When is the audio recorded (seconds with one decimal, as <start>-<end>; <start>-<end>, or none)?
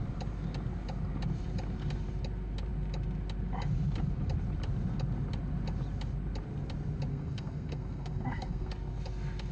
0.0-7.1; 8.7-9.5